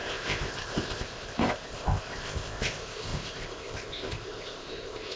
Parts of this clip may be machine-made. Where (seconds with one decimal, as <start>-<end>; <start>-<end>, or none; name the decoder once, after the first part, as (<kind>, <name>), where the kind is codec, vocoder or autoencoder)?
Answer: 0.0-5.2 (codec, ZipCodec)